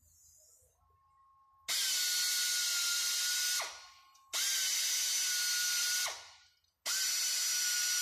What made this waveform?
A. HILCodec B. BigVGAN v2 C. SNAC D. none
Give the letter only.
D